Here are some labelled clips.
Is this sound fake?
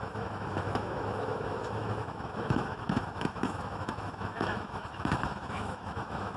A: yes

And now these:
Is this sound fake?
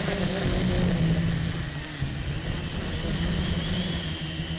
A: no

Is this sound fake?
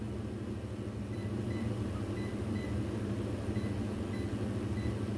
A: no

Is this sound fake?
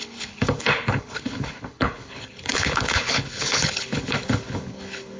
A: yes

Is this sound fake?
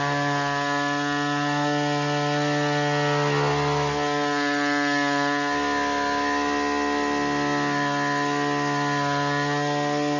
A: no